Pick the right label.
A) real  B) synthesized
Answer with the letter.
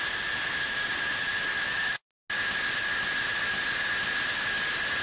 A